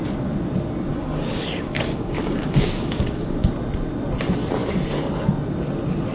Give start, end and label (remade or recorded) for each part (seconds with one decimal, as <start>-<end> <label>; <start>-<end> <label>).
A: 0.0-0.9 recorded; 0.9-3.5 remade; 3.5-6.1 recorded